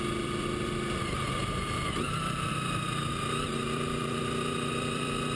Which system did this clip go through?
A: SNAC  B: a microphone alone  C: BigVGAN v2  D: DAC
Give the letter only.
C